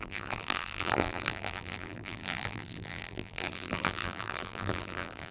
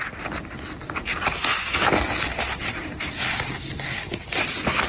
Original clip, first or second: second